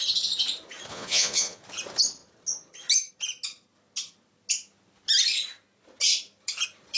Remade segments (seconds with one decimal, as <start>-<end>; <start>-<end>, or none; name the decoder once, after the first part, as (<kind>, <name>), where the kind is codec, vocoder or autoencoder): 0.9-1.6 (vocoder, Vocos)